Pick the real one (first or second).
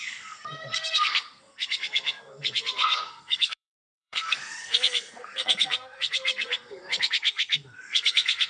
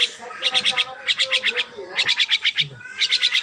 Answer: second